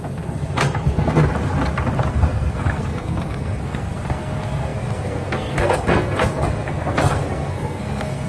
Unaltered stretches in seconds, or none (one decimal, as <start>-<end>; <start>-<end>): 1.2-2.1